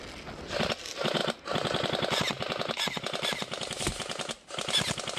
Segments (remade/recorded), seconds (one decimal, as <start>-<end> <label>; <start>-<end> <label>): 0.0-5.2 recorded